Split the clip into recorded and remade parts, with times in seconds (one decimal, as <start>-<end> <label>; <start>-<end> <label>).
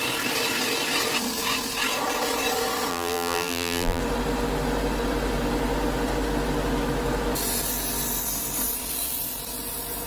0.0-2.9 recorded; 2.9-4.0 remade; 4.0-10.1 recorded